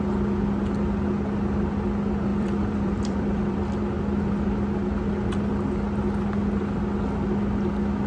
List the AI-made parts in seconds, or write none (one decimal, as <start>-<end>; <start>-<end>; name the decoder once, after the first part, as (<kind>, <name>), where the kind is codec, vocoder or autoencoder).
2.3-3.8 (vocoder, BigVGAN v2)